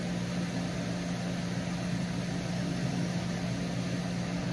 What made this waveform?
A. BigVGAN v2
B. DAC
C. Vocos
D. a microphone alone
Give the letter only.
D